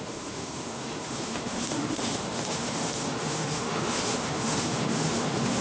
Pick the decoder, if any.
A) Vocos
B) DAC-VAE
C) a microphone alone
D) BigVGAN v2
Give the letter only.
B